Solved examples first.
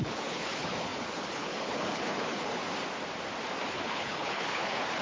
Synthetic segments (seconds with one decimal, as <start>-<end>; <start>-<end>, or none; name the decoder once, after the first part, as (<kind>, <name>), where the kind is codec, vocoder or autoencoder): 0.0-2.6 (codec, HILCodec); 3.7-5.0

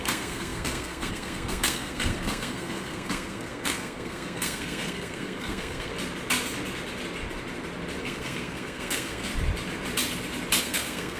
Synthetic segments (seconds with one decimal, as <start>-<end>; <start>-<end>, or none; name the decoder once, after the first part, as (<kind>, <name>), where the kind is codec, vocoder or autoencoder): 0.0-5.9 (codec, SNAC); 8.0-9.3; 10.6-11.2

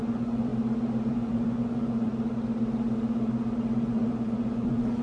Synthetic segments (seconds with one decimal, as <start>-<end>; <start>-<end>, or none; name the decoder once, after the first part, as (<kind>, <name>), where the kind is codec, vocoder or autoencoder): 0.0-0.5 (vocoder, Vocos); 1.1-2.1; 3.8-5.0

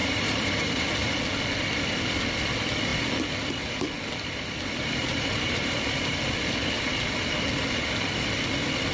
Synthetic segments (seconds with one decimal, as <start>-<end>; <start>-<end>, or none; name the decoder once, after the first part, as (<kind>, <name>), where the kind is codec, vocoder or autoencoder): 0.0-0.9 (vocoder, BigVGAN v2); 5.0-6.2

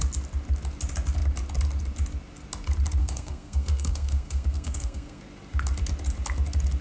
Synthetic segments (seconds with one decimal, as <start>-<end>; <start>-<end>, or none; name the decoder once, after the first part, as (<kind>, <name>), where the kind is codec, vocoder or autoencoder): 3.0-5.2 (codec, SNAC)

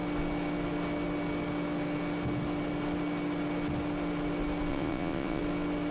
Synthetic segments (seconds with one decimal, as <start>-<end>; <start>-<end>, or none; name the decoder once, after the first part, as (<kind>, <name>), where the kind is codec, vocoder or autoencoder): 4.7-5.4 (vocoder, Vocos)